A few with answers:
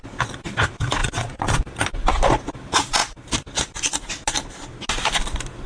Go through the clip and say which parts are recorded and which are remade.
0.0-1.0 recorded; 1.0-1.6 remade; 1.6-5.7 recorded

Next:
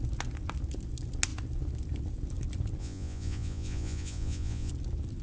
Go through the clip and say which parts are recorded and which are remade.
0.0-2.8 recorded; 2.8-4.7 remade; 4.7-5.2 recorded